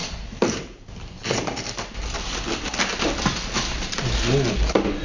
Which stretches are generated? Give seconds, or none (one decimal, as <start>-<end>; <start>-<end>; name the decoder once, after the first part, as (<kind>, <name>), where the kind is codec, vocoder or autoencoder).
0.0-2.4 (vocoder, BigVGAN v2)